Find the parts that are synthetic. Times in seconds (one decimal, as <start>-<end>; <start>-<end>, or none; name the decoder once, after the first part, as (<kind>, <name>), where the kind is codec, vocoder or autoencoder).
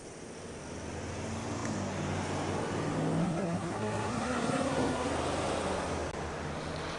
3.2-5.1 (codec, SNAC)